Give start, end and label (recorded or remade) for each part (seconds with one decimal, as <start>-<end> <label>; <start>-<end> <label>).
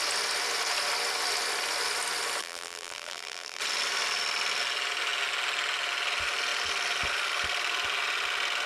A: 0.0-2.4 recorded; 2.4-3.6 remade; 3.6-8.7 recorded